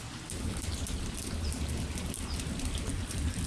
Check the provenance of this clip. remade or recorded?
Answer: recorded